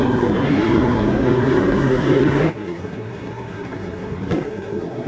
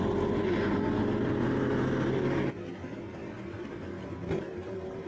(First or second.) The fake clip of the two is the first